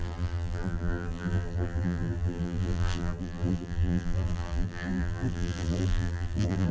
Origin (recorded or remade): remade